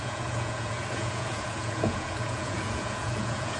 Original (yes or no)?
no